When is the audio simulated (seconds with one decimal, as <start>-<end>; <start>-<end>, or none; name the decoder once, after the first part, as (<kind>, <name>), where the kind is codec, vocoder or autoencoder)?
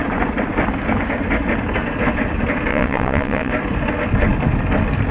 2.7-3.5 (vocoder, WaveNeXt)